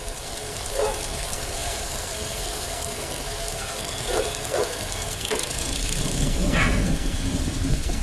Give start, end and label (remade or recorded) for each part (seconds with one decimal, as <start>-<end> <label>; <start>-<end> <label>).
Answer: 0.0-8.0 remade